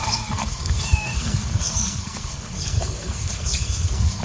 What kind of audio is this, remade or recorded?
remade